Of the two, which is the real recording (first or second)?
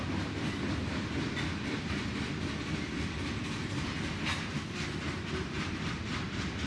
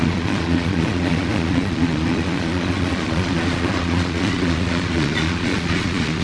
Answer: first